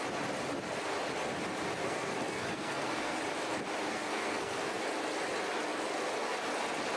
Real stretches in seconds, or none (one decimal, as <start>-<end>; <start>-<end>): 0.0-1.8; 3.2-3.9; 4.8-7.0

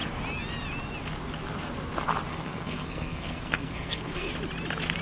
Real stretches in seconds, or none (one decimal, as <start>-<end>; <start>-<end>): 0.0-2.3; 4.3-5.0

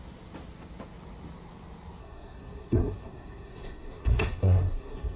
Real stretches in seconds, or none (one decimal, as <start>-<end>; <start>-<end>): 0.0-2.0

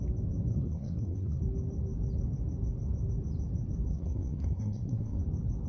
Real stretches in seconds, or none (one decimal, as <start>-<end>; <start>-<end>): 0.0-0.5; 1.4-3.9; 5.2-5.7

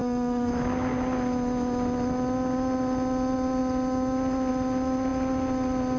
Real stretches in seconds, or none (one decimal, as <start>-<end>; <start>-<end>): 0.5-6.0

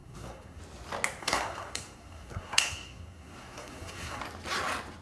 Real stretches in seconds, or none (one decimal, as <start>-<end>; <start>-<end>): 0.6-1.2; 4.2-5.0